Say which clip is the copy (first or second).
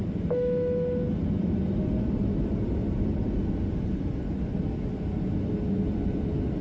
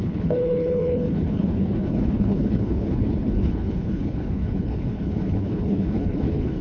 second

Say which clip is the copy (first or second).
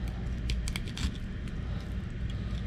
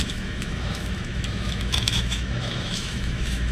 second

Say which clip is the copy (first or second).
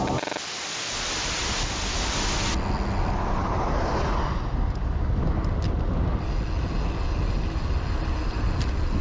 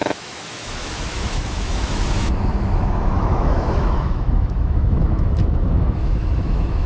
second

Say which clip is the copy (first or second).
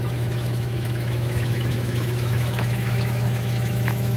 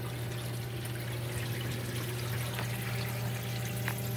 first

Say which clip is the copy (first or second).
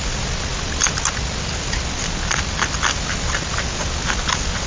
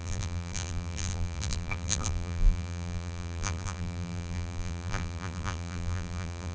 second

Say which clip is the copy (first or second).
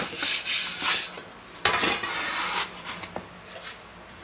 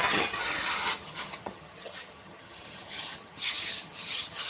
second